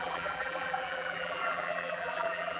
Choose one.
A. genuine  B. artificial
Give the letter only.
B